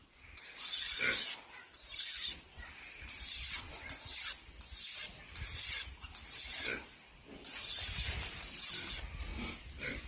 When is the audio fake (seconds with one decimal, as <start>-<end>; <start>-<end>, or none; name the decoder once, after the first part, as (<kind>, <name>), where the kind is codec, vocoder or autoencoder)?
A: 0.0-10.1 (vocoder, BigVGAN v2)